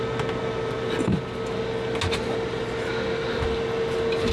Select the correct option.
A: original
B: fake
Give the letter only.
A